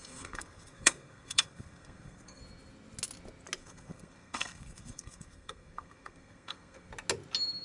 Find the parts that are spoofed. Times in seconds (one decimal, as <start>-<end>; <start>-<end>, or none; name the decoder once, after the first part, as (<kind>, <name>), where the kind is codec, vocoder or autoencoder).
0.0-2.4 (codec, SNAC); 3.6-6.9

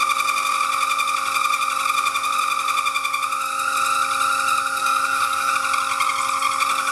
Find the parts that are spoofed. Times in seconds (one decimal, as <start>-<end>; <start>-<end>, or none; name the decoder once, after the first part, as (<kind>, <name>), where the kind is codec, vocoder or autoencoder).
4.8-5.5 (codec, DAC)

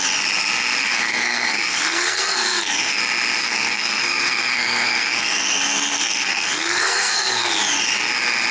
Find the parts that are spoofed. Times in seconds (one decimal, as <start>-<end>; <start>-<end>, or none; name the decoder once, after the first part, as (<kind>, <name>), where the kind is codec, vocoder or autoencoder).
0.8-3.0 (codec, SNAC); 3.4-7.5